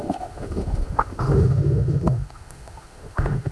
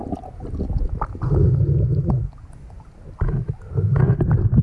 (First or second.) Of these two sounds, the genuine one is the second